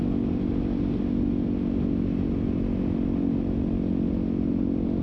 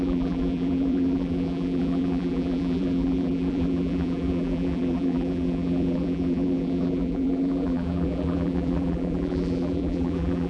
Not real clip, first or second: second